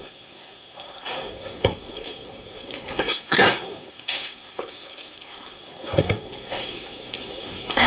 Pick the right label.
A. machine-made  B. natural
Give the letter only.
A